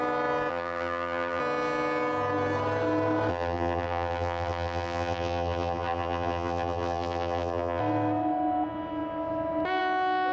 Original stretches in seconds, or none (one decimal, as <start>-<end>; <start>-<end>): 0.0-0.5; 1.4-3.3; 7.8-10.3